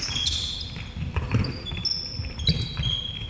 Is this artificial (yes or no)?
no